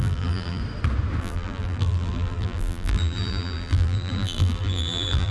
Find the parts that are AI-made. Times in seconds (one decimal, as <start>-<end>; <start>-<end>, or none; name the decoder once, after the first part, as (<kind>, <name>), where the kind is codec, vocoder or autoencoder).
0.0-0.6 (vocoder, BigVGAN v2); 1.2-5.3

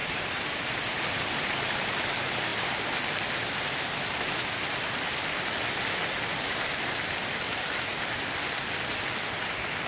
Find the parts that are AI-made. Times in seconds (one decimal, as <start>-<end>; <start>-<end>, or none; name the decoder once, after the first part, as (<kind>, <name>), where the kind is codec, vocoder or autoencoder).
0.0-1.0 (vocoder, BigVGAN v2)

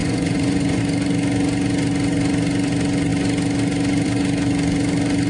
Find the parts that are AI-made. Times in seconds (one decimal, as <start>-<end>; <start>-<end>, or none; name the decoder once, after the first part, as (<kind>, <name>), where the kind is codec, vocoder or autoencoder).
0.0-0.8 (vocoder, Vocos)

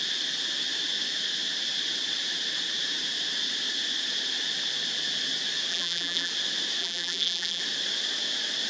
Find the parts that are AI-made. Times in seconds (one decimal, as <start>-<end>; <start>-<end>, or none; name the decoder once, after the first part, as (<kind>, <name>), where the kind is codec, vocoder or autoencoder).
5.7-6.3 (vocoder, BigVGAN v2); 6.8-7.6

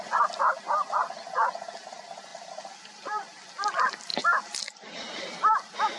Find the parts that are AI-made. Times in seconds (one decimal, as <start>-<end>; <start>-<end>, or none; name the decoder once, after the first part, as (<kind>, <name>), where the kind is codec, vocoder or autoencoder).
2.3-3.5 (vocoder, BigVGAN v2)